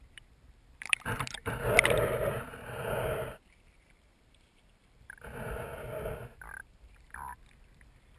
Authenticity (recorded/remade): remade